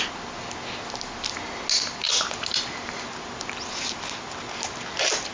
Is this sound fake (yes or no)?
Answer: no